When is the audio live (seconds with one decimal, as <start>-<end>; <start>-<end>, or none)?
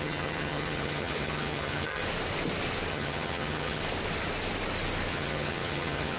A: 2.0-2.9; 3.8-5.1